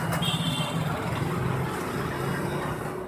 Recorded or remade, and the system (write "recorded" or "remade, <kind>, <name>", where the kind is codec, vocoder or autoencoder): recorded